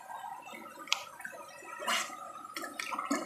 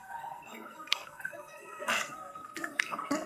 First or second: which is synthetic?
second